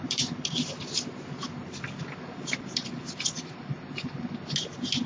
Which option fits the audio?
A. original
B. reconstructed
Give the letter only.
A